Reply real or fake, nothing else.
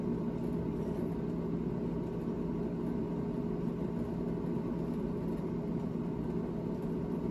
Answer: real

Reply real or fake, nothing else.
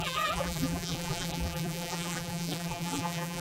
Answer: fake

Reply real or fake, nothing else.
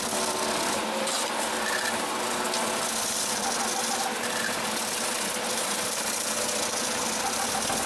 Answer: fake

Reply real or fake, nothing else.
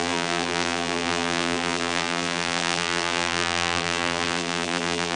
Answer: fake